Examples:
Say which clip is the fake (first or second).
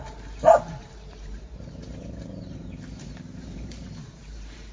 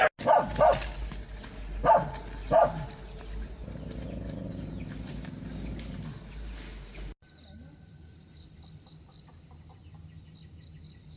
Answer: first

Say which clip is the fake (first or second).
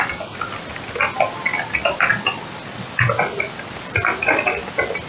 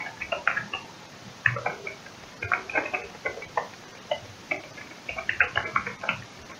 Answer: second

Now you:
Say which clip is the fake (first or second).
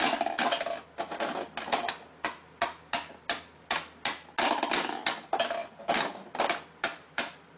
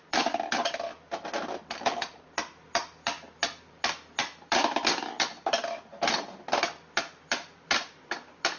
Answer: second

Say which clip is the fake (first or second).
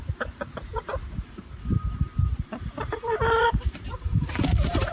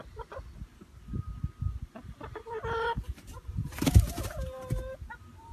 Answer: first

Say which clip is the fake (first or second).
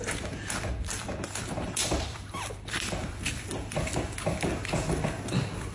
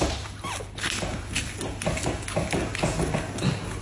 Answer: first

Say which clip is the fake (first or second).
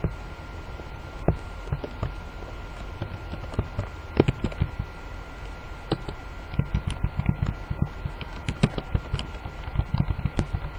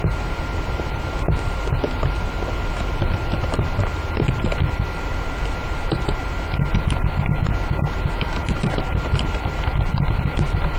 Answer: second